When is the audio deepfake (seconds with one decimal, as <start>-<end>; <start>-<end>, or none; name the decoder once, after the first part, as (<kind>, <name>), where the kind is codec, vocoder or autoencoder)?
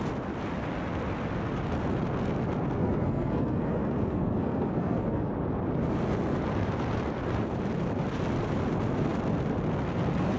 2.8-5.3 (codec, SNAC)